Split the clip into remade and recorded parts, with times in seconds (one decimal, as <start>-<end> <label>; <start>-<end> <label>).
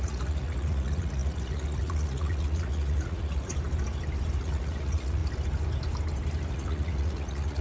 0.0-3.5 remade; 3.5-4.4 recorded; 4.4-5.2 remade; 5.2-6.5 recorded; 6.5-7.6 remade